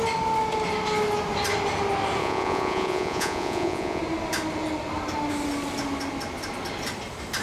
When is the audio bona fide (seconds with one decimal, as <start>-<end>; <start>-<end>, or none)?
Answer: 0.0-2.2; 4.0-7.4